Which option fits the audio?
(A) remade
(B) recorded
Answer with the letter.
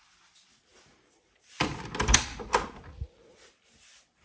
B